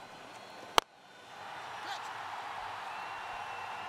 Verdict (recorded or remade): recorded